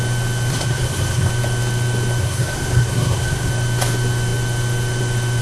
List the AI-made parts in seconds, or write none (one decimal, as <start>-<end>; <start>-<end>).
0.5-1.3; 2.2-3.5